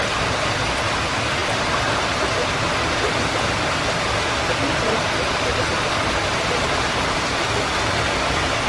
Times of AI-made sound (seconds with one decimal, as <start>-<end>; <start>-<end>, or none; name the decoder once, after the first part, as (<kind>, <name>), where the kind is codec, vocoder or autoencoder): none